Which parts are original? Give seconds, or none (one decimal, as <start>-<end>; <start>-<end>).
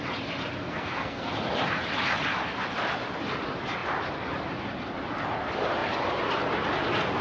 0.0-0.6; 1.3-7.2